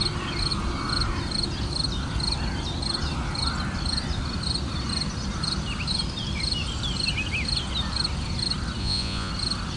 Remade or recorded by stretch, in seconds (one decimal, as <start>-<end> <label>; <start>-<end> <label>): 0.0-8.8 recorded; 8.8-9.3 remade; 9.3-9.8 recorded